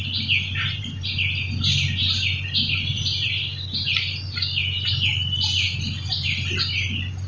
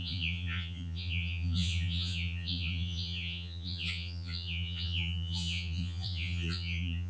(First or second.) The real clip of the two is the first